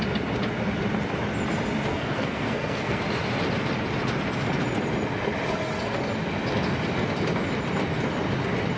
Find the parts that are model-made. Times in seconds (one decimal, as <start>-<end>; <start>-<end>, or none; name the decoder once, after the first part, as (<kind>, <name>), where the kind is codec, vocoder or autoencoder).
1.9-3.0 (codec, SNAC)